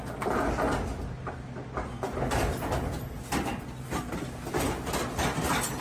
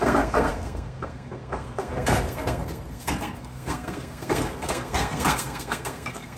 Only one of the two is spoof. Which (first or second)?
second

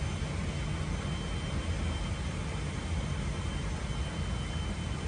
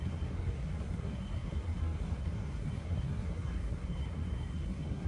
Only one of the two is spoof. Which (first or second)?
second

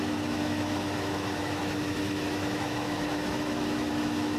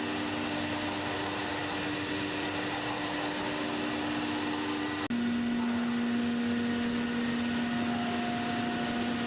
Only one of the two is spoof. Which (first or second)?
first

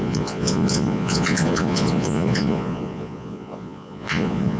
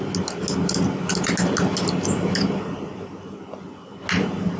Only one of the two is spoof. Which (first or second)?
first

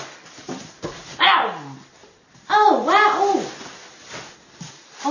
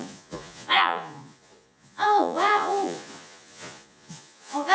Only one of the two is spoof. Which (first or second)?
second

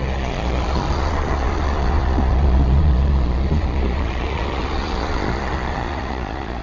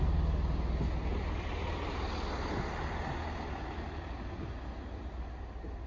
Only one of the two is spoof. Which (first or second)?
first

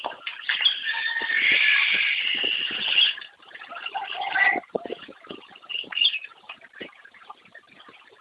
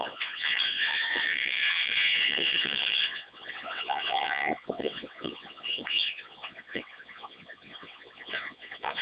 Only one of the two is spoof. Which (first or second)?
second